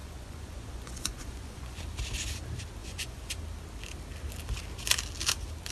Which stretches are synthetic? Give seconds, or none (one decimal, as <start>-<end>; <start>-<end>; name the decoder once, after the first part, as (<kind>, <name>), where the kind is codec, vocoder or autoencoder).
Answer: 0.0-1.8 (vocoder, Vocos); 2.8-3.4